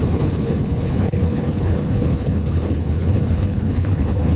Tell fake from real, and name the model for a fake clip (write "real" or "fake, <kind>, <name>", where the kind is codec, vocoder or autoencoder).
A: fake, codec, HILCodec